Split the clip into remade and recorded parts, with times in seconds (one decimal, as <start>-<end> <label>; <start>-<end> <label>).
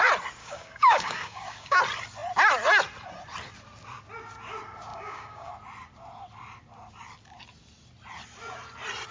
0.0-0.4 recorded; 0.4-1.8 remade; 1.8-4.9 recorded; 4.9-5.5 remade; 5.5-9.1 recorded